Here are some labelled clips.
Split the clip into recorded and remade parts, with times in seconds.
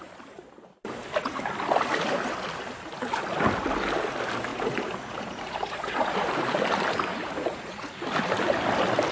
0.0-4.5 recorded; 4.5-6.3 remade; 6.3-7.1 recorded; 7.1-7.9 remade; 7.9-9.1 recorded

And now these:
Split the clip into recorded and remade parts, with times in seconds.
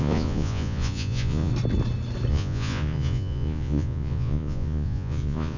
0.0-1.5 remade; 1.5-2.3 recorded; 2.3-5.6 remade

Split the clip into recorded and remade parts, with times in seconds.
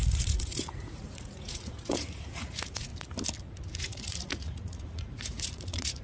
0.0-2.9 remade; 2.9-3.7 recorded; 3.7-6.0 remade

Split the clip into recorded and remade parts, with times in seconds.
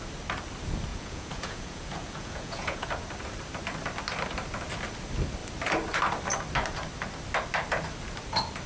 0.0-0.9 recorded; 0.9-2.9 remade; 2.9-8.7 recorded